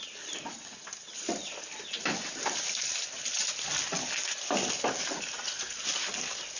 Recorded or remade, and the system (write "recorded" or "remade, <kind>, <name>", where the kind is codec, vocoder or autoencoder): recorded